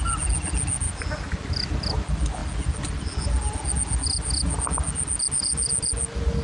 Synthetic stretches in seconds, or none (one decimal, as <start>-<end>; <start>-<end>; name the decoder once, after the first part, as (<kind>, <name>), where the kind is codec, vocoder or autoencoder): none